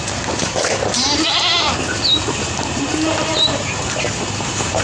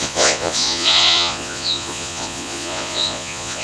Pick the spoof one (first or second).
second